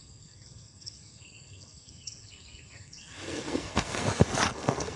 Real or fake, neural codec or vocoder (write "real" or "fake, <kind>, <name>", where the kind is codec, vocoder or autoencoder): fake, codec, SNAC